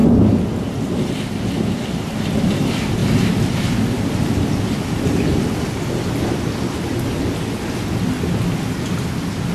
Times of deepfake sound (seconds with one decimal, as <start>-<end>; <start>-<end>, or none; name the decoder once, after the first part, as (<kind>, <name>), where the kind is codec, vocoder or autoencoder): 3.0-5.4 (vocoder, BigVGAN v2)